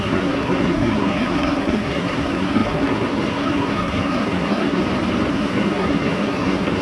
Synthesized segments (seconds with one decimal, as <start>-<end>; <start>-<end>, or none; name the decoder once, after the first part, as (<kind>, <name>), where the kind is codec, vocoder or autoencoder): 0.0-4.8 (codec, SNAC); 5.3-6.8